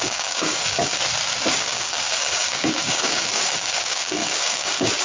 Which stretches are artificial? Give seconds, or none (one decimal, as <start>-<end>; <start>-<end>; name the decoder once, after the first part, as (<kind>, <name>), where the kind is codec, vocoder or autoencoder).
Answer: 0.0-1.0 (codec, DAC); 1.5-5.0